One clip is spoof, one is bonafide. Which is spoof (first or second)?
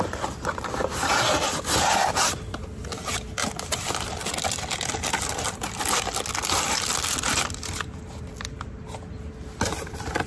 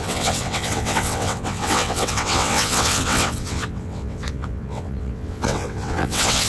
second